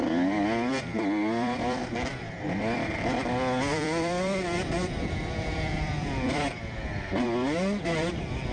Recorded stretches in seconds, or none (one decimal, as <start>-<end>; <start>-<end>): 1.8-2.6